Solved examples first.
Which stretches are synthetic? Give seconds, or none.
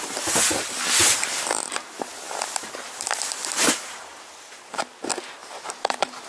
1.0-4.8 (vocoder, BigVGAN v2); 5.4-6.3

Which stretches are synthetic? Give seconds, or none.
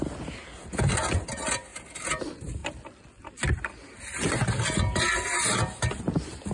1.7-2.2 (vocoder, BigVGAN v2)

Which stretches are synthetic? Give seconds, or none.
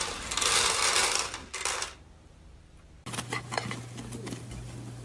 none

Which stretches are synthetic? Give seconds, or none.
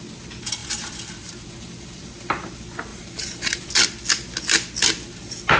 0.6-2.5 (vocoder, BigVGAN v2); 2.9-3.7